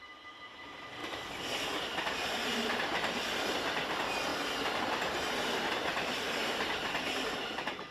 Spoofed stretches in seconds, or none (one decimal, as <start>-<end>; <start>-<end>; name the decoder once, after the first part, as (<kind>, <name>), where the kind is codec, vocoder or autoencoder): 0.0-1.0 (vocoder, BigVGAN v2); 1.8-7.9

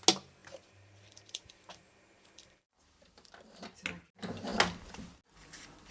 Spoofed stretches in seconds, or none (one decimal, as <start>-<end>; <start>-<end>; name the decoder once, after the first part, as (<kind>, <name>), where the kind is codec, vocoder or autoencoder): 0.4-3.3 (vocoder, BigVGAN v2)

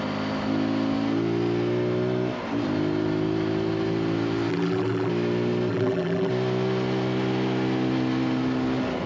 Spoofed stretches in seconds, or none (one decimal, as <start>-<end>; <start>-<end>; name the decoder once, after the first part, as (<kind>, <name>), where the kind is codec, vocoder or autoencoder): 4.5-5.1 (vocoder, BigVGAN v2); 5.7-6.3

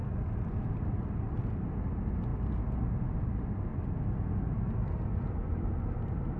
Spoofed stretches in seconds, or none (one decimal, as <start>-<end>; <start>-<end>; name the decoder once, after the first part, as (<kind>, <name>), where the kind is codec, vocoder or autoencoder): 1.3-3.7 (vocoder, BigVGAN v2); 5.3-6.4